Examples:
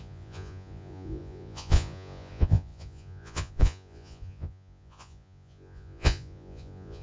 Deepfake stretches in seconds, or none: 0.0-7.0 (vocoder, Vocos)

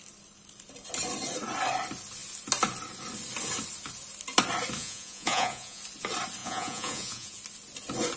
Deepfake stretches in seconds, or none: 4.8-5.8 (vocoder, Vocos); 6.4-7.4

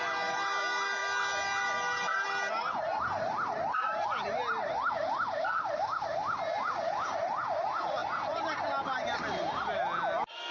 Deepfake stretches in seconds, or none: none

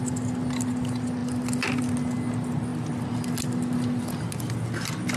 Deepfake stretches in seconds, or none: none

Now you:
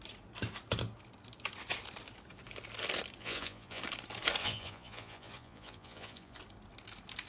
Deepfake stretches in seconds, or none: 3.2-3.8 (vocoder, Vocos); 4.4-6.4

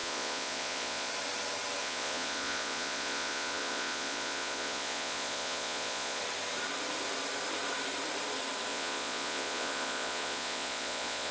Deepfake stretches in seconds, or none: 0.0-1.1 (vocoder, Vocos); 1.8-6.2; 8.7-11.3